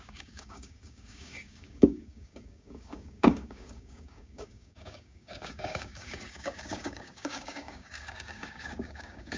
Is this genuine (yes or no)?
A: no